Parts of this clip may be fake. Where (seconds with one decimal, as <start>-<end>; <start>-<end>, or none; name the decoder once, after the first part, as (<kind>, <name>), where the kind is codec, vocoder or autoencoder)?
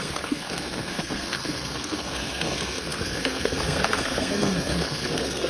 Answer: 0.0-5.5 (codec, SNAC)